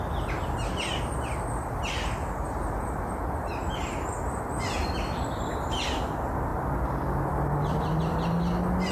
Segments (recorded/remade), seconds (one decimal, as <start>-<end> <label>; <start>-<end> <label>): 0.0-8.9 recorded